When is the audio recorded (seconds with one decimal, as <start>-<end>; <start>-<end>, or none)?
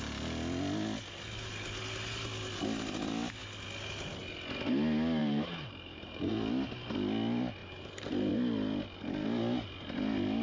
0.0-5.2; 6.3-7.6; 8.3-10.4